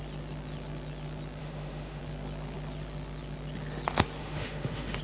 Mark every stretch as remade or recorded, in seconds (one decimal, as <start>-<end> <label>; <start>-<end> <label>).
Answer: 0.0-1.4 recorded; 1.4-2.0 remade; 2.0-4.2 recorded; 4.2-5.0 remade